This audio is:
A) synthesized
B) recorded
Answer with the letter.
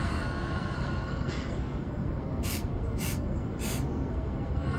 A